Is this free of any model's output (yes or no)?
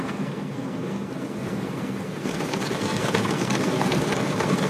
no